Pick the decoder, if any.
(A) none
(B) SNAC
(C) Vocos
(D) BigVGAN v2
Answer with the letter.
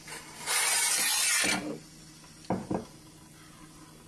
A